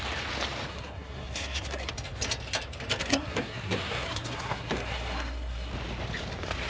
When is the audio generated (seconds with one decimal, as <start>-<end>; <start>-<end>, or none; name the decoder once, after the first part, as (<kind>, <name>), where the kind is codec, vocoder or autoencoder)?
0.7-1.9 (codec, SNAC); 3.0-5.7